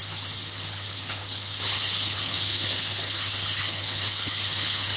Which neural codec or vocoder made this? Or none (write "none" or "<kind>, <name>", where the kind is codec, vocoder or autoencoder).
codec, HILCodec